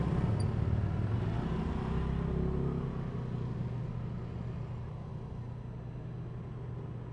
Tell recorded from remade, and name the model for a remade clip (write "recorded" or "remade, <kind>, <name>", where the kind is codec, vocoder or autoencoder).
recorded